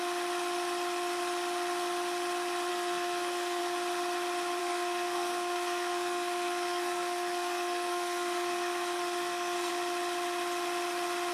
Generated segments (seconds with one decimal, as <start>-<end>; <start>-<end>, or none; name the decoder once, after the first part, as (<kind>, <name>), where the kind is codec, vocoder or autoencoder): 2.7-3.6 (codec, SNAC); 4.6-9.7

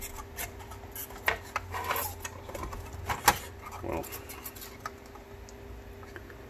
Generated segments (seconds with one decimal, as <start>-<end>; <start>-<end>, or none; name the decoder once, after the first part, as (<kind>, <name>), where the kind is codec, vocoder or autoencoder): none

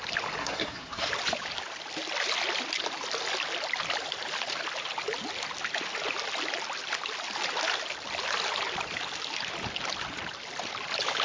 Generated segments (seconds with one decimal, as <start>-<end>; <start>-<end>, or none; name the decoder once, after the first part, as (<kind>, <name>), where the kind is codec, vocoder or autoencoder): 0.4-1.1 (codec, SNAC)